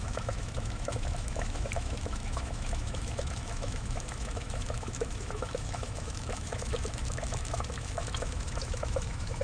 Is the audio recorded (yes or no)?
no